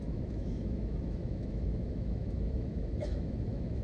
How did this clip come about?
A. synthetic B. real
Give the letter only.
A